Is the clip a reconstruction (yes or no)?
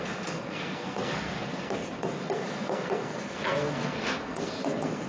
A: yes